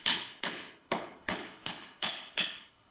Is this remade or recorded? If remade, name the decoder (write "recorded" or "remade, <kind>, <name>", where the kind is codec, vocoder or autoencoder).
remade, codec, HILCodec